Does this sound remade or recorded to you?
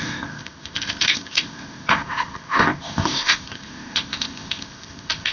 remade